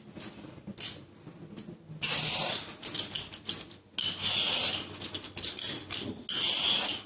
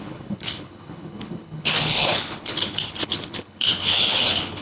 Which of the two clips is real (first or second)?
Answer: first